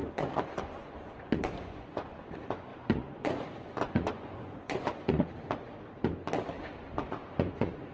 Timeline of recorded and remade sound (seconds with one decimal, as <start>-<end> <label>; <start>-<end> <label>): 0.0-5.3 remade; 5.3-7.0 recorded; 7.0-7.9 remade